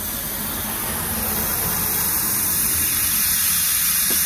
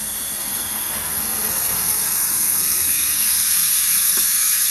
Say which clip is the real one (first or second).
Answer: first